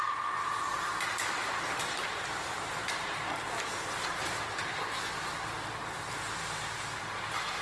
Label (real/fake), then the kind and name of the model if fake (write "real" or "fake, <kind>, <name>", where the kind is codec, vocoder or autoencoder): real